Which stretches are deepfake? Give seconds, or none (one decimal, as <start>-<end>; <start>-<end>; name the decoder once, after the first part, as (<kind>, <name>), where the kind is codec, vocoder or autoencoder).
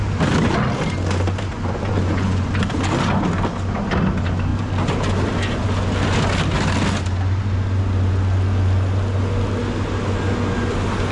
1.5-2.5 (vocoder, Vocos)